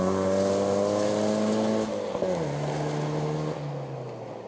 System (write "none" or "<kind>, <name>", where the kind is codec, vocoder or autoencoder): none